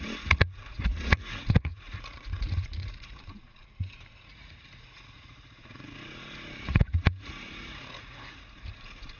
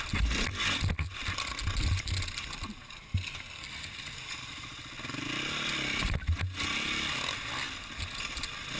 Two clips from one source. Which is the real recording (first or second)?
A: second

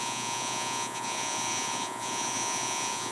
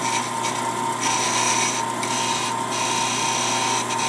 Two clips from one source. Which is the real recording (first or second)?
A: second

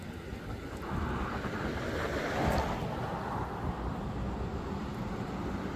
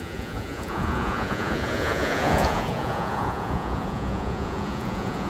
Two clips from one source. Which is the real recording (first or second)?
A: first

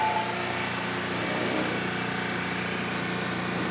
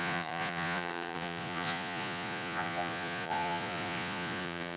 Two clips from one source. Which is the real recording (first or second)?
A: first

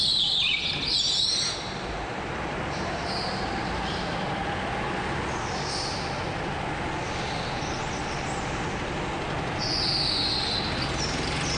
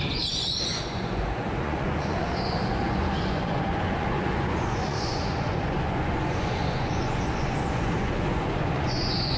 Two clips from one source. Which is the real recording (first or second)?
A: first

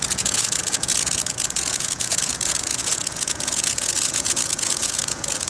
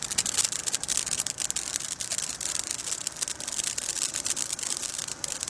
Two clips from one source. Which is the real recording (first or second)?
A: second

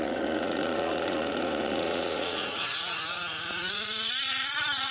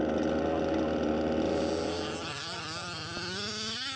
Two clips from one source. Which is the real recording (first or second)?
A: second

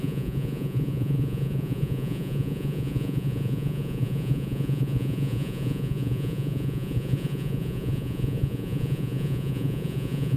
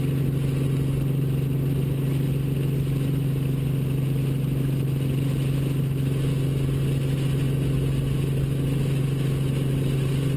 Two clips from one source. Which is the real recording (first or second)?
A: second